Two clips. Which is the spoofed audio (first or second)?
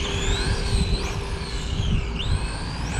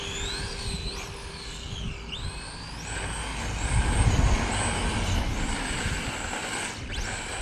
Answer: first